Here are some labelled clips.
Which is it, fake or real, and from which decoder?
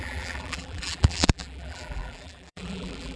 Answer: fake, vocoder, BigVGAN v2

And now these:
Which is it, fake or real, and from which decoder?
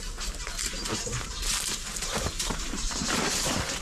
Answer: fake, vocoder, BigVGAN v2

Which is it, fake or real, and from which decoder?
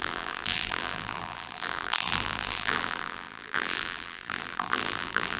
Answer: fake, vocoder, BigVGAN v2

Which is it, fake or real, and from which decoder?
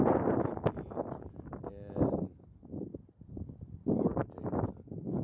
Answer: fake, vocoder, BigVGAN v2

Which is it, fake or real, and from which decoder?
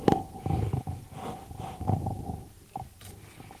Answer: fake, vocoder, BigVGAN v2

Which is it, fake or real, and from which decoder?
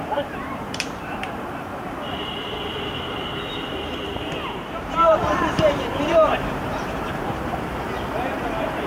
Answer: fake, vocoder, BigVGAN v2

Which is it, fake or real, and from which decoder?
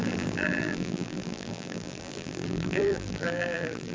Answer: fake, vocoder, BigVGAN v2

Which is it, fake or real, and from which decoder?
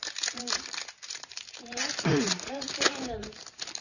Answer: fake, vocoder, BigVGAN v2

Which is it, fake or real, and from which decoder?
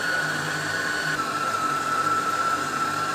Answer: fake, vocoder, BigVGAN v2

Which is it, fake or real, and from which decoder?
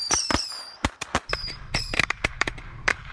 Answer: fake, vocoder, BigVGAN v2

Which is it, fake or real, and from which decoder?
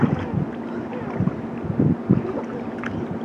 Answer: real